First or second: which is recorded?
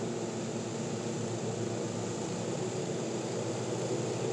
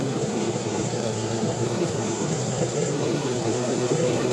first